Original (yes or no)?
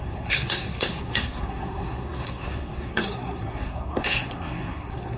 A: no